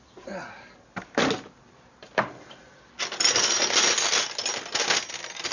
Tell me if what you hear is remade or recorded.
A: recorded